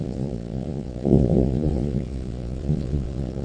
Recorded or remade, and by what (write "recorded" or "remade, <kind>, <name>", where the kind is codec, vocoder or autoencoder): remade, vocoder, Vocos